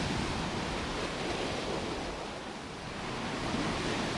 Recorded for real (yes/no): yes